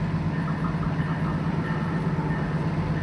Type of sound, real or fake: real